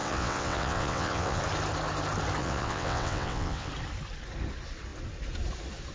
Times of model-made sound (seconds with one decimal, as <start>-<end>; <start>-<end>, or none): 0.0-1.4; 2.4-3.7

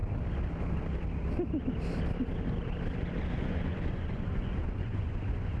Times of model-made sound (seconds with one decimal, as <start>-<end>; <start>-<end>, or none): 3.4-5.6

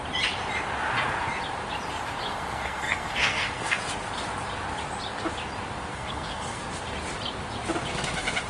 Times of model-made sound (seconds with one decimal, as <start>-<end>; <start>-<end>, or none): 2.3-3.8; 5.9-6.6

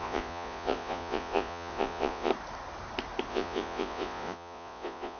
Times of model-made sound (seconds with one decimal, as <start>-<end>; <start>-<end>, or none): 0.0-2.3; 3.3-5.2

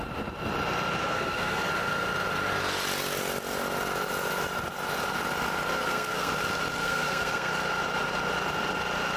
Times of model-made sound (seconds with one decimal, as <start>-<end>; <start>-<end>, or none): 1.0-1.7; 5.7-6.3; 6.8-7.5

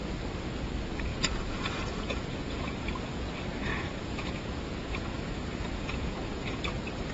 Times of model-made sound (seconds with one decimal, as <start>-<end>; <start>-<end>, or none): 1.1-3.3; 3.7-6.6

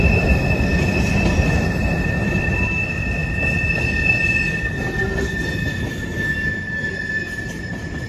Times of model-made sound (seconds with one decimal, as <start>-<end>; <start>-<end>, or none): 0.0-3.2; 6.9-8.1